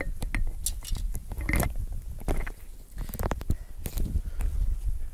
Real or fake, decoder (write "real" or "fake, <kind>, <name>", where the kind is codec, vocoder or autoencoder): real